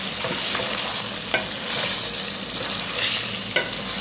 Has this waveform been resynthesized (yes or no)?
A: no